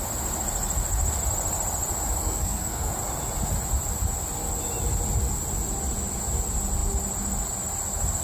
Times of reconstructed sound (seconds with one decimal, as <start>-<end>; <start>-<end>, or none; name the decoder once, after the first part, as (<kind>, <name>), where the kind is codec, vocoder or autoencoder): 2.2-2.9 (codec, SNAC)